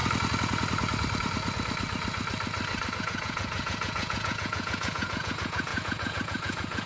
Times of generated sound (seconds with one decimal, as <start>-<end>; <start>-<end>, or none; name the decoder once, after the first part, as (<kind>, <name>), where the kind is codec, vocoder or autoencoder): 2.9-6.9 (vocoder, Vocos)